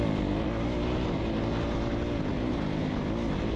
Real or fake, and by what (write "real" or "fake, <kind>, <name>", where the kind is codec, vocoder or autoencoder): real